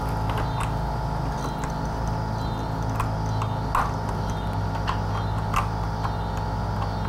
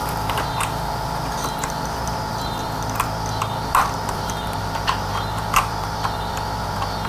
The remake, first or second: second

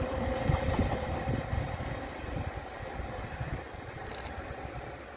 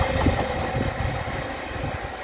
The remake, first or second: first